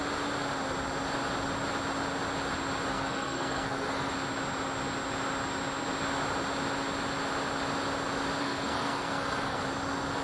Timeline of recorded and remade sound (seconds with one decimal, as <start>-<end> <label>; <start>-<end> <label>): 0.0-2.9 recorded; 2.9-4.1 remade; 4.1-8.4 recorded; 8.4-9.6 remade; 9.6-10.2 recorded